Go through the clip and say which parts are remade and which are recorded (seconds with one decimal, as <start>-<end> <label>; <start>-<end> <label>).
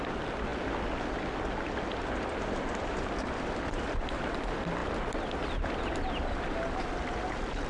0.0-4.8 recorded; 4.8-6.9 remade; 6.9-7.7 recorded